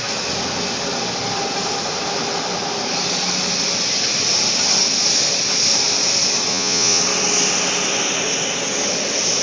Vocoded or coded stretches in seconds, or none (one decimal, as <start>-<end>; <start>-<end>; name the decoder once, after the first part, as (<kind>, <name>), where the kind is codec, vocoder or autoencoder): 6.5-7.0 (vocoder, Vocos)